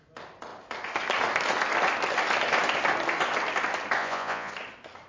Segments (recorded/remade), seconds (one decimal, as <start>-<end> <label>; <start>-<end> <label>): 0.0-4.0 recorded; 4.0-4.5 remade; 4.5-5.1 recorded